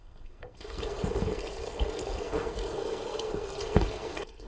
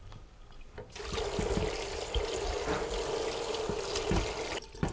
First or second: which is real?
second